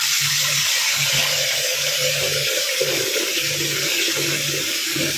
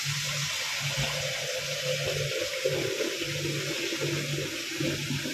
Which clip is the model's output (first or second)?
first